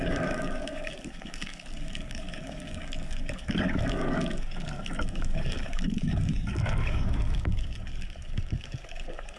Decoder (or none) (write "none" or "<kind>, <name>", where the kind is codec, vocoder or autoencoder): codec, DAC